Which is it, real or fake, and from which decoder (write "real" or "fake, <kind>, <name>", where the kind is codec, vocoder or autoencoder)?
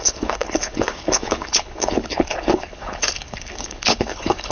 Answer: fake, codec, HILCodec